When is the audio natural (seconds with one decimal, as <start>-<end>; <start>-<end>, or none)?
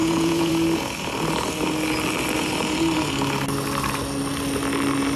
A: 0.5-5.2